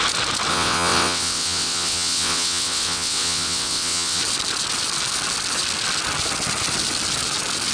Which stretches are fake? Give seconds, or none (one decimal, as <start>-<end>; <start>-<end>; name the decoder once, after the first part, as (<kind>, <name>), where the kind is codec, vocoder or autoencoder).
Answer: 0.5-4.2 (vocoder, WaveNeXt)